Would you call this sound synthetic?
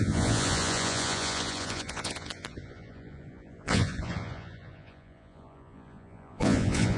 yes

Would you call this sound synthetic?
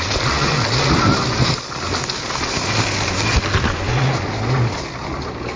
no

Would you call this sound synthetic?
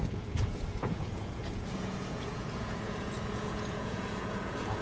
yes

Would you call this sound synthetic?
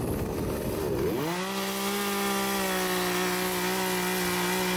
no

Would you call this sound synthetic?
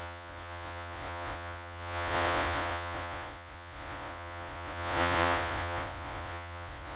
yes